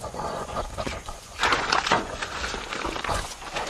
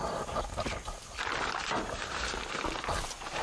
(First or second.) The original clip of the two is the second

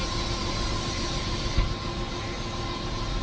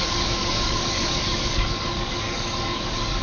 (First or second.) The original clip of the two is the first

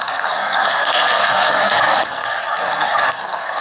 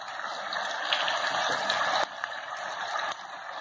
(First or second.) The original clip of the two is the second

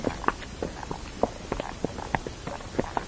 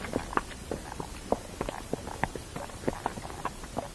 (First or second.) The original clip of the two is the first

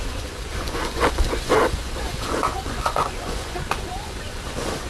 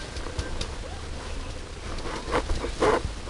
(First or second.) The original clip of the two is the second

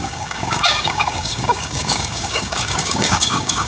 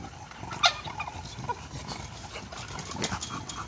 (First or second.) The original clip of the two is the second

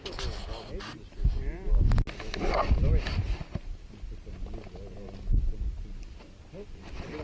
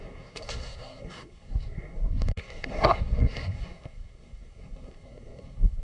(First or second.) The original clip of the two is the first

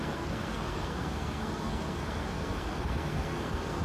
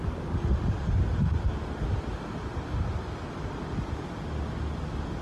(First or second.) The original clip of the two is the second